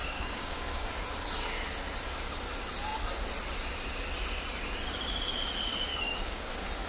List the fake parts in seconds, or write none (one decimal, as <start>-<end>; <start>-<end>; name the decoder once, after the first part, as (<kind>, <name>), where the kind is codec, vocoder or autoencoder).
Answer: 0.0-0.9 (codec, DAC); 5.9-6.5